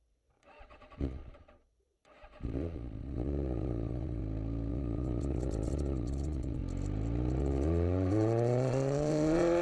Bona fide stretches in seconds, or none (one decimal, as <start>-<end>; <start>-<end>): 4.2-4.7; 6.6-7.4

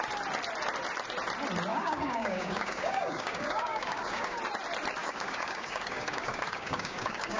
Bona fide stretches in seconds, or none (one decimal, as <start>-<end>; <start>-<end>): 0.0-1.7; 4.4-5.0

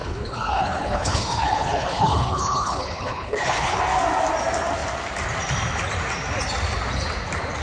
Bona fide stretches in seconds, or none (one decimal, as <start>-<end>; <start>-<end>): 3.8-7.6

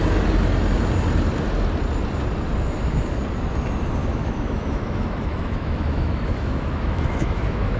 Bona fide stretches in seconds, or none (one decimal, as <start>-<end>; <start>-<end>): 0.0-4.0

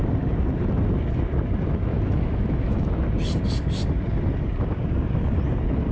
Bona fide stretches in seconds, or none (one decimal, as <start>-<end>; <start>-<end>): 0.0-1.9; 2.9-5.9

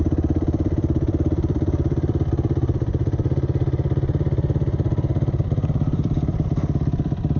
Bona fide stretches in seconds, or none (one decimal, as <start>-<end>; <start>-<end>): 2.9-5.4

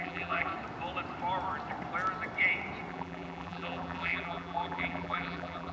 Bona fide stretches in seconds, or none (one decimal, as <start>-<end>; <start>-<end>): 0.5-2.9

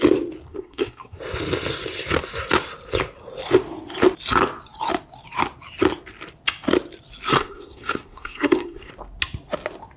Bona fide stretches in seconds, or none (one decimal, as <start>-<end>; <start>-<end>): 0.0-0.5; 1.2-7.3; 8.9-10.0